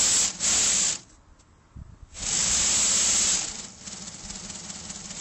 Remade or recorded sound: recorded